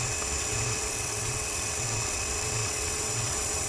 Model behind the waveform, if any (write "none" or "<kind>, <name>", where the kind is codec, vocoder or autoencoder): vocoder, WaveNeXt